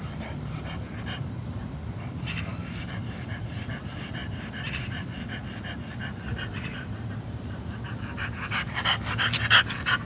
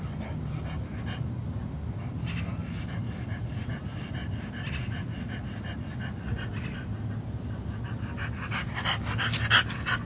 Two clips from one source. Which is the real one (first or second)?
second